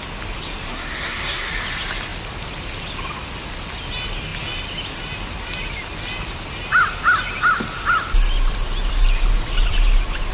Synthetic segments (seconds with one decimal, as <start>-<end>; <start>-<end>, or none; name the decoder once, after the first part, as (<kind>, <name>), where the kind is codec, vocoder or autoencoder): 0.7-1.5 (codec, SNAC)